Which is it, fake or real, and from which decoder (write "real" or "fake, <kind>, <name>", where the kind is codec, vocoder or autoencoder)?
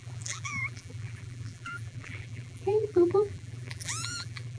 fake, vocoder, BigVGAN v2